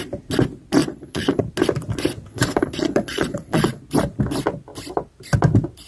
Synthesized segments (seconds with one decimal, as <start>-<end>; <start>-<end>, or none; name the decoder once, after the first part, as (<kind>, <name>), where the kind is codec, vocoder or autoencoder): 0.8-1.4 (vocoder, Vocos); 2.3-3.8